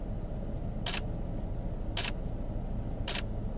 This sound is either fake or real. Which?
real